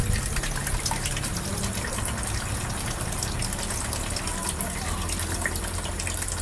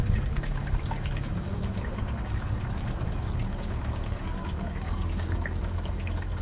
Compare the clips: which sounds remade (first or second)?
second